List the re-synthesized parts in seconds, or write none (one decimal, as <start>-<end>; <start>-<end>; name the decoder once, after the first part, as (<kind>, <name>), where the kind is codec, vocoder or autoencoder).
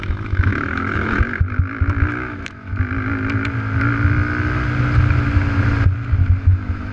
0.0-2.7 (autoencoder, DAC-VAE); 6.4-6.9